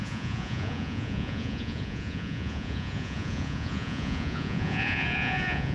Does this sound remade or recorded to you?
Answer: remade